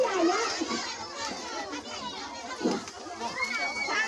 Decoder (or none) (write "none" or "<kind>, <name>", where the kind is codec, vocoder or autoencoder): none